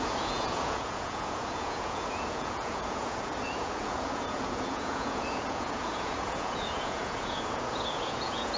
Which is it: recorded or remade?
remade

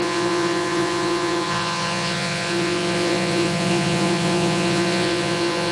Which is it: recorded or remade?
remade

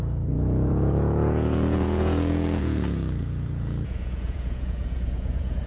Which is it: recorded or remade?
remade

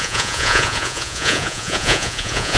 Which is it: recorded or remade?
remade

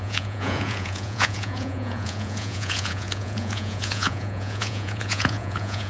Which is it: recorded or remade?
remade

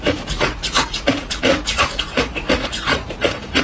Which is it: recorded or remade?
remade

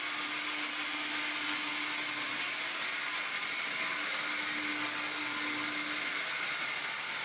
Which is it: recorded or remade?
recorded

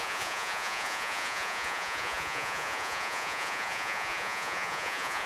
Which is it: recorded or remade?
remade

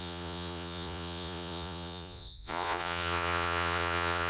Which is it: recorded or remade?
remade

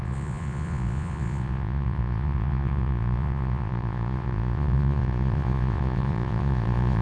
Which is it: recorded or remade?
remade